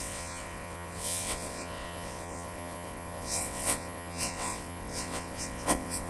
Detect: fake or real fake